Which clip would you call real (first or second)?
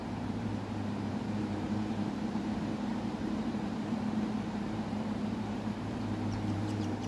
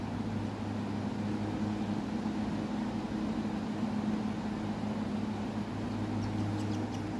second